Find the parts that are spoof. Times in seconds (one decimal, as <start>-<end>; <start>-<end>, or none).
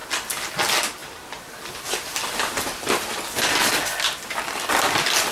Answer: 0.0-0.5; 1.0-3.1